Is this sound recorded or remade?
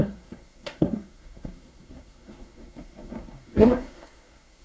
remade